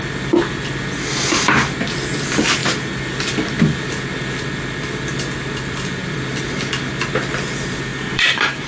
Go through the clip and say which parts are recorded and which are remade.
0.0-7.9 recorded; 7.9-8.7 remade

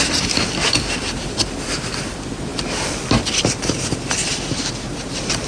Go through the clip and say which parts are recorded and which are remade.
0.0-5.5 recorded

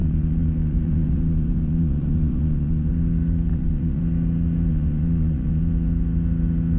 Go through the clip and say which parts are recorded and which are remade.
0.0-2.9 remade; 2.9-3.5 recorded; 3.5-4.0 remade; 4.0-4.7 recorded; 4.7-5.6 remade; 5.6-6.8 recorded

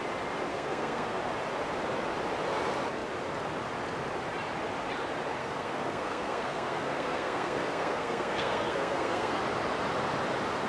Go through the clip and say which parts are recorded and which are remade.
0.0-0.5 recorded; 0.5-1.2 remade; 1.2-5.4 recorded; 5.4-9.4 remade; 9.4-10.7 recorded

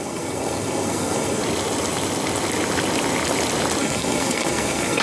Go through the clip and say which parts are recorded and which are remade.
0.0-1.4 remade; 1.4-3.8 recorded; 3.8-5.0 remade